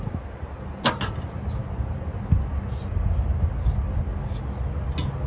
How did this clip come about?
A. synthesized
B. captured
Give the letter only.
B